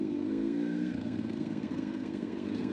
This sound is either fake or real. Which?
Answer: fake